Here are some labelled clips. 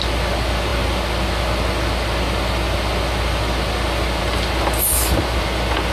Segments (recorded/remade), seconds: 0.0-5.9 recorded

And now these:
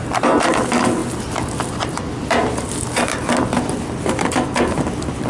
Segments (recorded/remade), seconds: 0.0-5.3 recorded